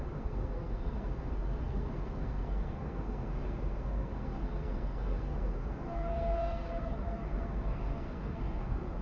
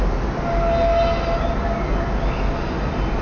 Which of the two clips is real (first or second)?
second